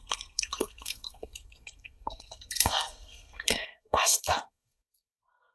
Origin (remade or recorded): remade